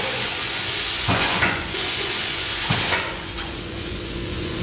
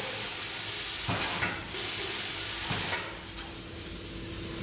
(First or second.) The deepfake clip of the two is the first